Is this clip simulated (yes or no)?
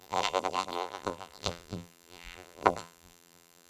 yes